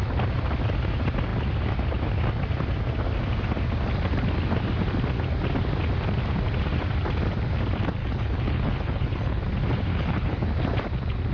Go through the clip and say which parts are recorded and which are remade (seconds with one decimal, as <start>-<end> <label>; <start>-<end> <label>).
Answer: 0.0-8.0 recorded; 8.0-9.4 remade; 9.4-9.9 recorded; 9.9-10.5 remade; 10.5-11.3 recorded